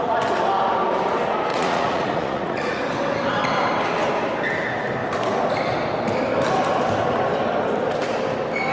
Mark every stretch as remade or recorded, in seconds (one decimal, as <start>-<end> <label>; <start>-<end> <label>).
0.0-1.5 recorded; 1.5-2.8 remade; 2.8-8.7 recorded